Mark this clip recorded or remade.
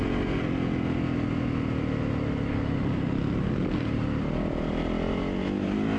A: recorded